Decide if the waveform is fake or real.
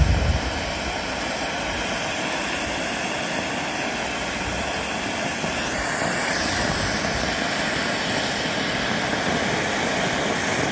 real